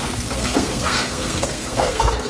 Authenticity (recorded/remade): remade